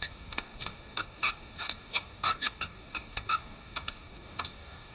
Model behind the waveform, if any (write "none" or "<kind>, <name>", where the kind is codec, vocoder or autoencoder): codec, DAC